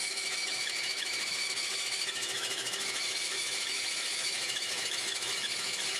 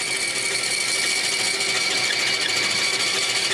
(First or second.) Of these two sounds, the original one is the second